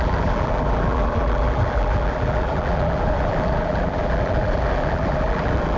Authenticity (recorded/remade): remade